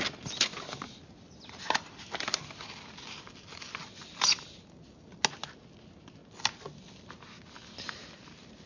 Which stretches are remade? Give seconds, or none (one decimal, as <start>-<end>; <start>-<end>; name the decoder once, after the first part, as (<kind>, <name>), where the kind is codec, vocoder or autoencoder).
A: none